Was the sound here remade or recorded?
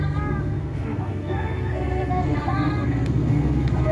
remade